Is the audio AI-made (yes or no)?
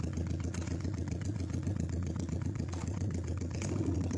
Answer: yes